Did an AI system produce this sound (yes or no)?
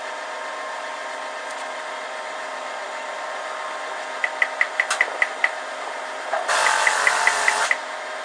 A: no